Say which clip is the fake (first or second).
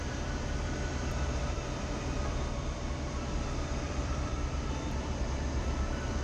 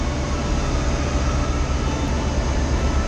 first